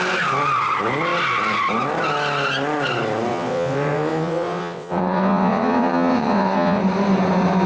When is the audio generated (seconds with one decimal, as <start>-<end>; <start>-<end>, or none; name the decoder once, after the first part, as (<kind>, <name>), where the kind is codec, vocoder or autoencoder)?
3.3-6.8 (vocoder, WaveNeXt)